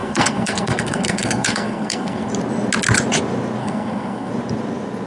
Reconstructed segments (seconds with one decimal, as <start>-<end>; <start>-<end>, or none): 0.0-2.3; 3.6-4.3

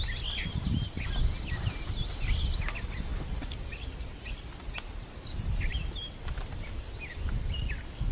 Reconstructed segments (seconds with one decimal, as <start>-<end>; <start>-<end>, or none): none

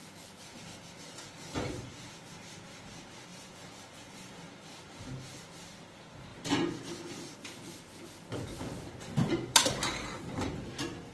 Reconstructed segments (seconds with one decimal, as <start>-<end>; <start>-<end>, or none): 3.3-4.3

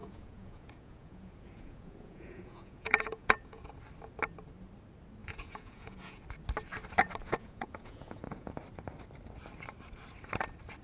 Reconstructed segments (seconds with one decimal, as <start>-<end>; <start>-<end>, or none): 0.0-3.7; 5.2-6.2; 7.2-8.5

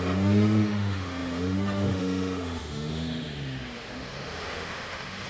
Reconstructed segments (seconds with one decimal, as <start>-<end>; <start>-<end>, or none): 0.0-5.3

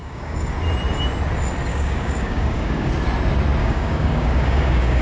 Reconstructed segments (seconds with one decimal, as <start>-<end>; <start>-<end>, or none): 0.0-0.5; 1.7-2.9; 3.6-5.0

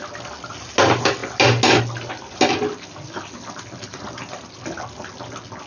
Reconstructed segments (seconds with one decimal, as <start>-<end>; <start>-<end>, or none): none